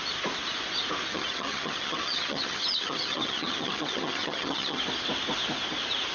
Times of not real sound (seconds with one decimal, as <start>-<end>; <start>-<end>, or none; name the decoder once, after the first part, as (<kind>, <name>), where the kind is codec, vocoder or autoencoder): 1.1-4.8 (vocoder, HiFi-GAN)